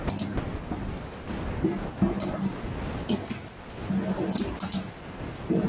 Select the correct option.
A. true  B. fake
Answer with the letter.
A